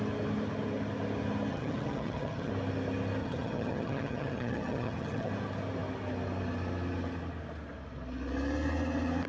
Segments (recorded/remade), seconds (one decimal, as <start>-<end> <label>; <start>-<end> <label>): 0.0-1.5 recorded; 1.5-2.5 remade; 2.5-3.2 recorded; 3.2-5.3 remade; 5.3-9.3 recorded